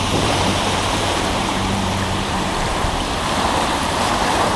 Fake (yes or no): yes